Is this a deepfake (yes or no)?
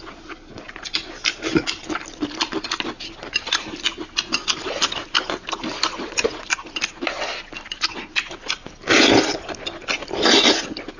no